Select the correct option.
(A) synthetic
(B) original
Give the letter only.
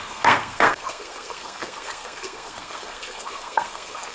A